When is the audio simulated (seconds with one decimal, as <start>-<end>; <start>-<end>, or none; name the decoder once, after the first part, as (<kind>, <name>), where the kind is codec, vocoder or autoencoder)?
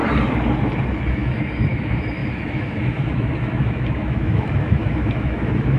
1.1-5.8 (autoencoder, DAC-VAE)